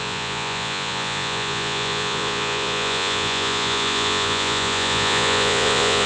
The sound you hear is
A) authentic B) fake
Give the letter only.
B